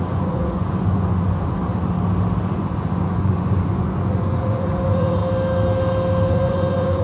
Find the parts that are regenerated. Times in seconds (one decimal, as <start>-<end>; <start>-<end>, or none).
0.0-1.6; 2.5-5.2; 6.3-7.0